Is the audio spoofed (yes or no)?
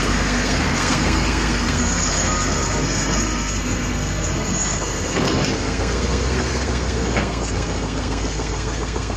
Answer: yes